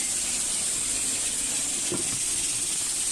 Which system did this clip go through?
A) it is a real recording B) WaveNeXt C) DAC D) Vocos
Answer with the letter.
A